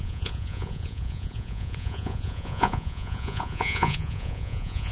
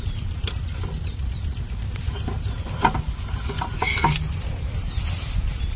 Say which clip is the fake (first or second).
first